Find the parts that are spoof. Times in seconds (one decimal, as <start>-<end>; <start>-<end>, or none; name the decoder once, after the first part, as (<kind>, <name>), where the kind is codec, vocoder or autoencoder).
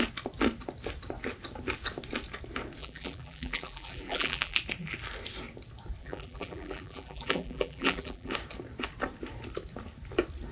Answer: 2.8-4.6 (vocoder, BigVGAN v2); 6.0-8.3